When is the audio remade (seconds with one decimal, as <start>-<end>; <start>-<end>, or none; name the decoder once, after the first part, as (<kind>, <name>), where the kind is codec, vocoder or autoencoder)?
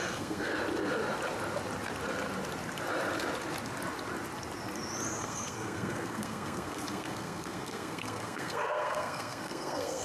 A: 0.0-0.5 (codec, SNAC); 5.2-10.0